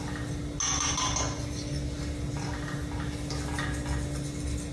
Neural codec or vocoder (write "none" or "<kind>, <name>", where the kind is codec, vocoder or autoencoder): none